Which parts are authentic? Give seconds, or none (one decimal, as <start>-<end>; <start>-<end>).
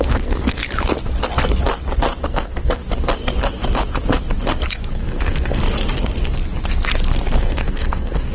0.6-2.2; 2.8-4.9; 5.6-7.4